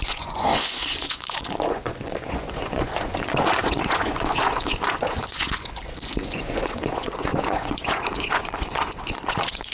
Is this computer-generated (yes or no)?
yes